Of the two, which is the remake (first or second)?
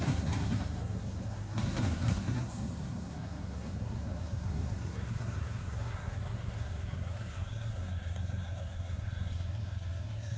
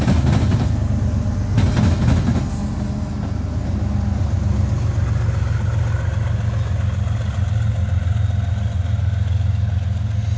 first